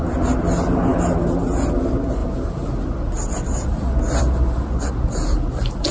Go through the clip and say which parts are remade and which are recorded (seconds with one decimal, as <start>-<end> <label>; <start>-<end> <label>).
0.0-5.9 recorded